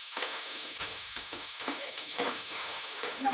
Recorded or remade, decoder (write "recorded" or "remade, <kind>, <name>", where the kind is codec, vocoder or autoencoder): remade, autoencoder, DAC-VAE